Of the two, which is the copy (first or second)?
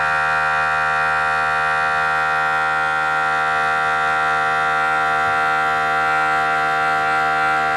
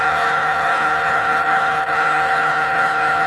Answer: second